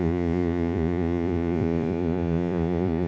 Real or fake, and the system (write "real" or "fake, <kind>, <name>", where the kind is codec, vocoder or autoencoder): fake, vocoder, Vocos